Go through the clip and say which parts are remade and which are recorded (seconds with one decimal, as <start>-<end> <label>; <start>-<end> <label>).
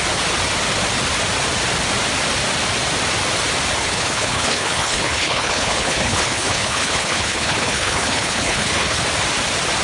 0.0-3.8 recorded; 3.8-9.0 remade; 9.0-9.8 recorded